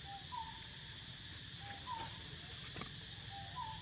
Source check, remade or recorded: recorded